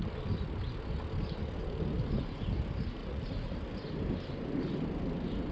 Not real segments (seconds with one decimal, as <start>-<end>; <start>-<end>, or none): 3.0-3.6